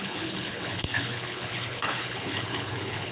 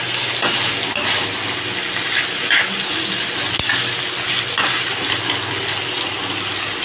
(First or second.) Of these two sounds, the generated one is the first